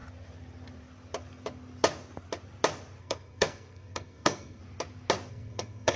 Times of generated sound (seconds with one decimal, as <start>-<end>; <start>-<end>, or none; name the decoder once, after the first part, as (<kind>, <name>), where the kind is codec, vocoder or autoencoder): 3.0-4.6 (codec, SNAC); 5.3-6.0